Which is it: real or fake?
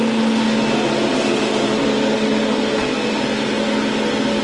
real